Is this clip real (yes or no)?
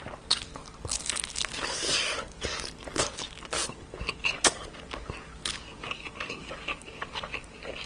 no